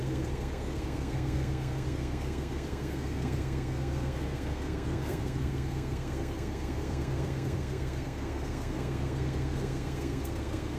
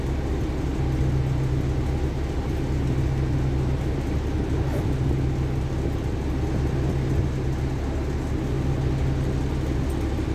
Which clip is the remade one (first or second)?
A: first